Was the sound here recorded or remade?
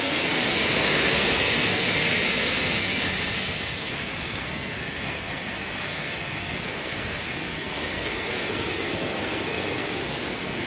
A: remade